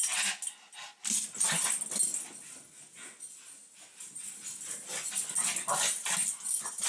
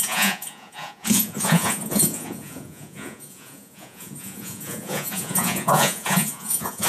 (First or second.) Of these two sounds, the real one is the first